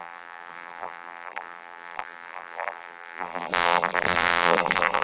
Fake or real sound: fake